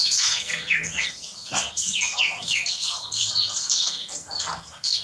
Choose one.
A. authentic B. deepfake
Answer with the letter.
B